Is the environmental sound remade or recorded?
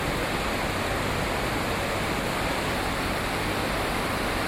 recorded